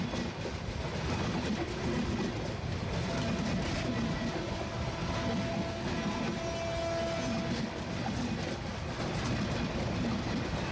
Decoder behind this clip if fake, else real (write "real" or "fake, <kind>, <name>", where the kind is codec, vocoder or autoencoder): real